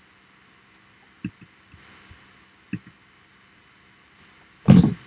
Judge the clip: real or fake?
real